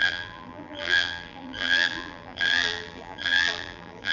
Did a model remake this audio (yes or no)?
yes